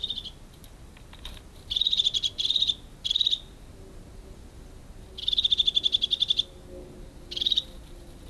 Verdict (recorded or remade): recorded